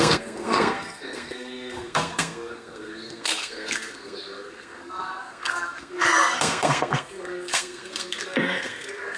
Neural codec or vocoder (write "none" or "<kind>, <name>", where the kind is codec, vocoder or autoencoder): codec, SNAC